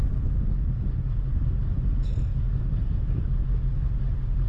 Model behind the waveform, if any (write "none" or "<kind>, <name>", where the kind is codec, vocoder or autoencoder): none